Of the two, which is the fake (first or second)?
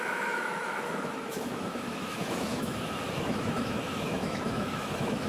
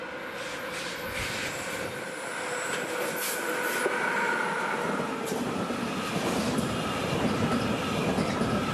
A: first